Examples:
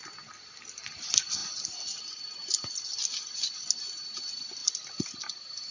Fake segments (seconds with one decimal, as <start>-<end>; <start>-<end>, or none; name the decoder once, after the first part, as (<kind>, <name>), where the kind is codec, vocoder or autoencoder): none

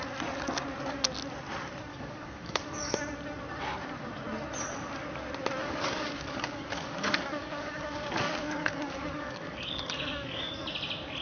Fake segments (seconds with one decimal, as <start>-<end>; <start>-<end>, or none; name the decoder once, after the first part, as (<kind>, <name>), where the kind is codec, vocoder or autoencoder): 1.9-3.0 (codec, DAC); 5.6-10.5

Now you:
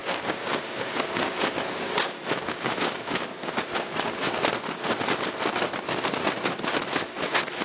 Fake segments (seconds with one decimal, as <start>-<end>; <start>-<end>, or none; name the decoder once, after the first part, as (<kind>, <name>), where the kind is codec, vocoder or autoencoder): 0.0-4.3 (codec, DAC)